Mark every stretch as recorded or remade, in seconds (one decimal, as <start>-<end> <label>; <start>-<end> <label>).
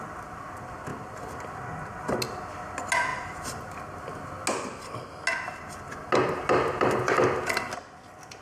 0.0-8.4 recorded